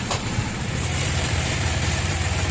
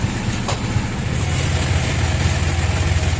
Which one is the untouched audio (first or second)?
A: second